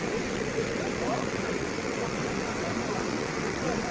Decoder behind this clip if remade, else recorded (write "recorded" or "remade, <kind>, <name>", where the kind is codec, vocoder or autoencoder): remade, vocoder, WaveNeXt